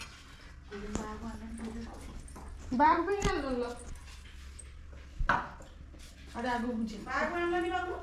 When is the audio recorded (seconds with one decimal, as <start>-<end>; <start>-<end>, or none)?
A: 0.0-1.9; 3.1-8.0